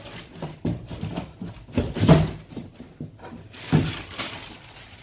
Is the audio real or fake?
real